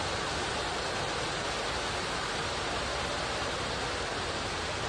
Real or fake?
real